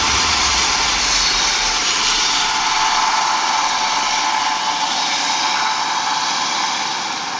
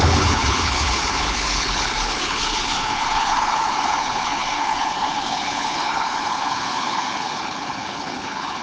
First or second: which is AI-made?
second